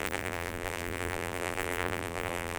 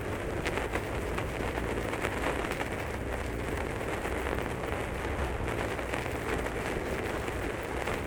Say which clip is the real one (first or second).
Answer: second